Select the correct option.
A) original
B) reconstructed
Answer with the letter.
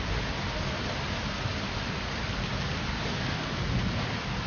A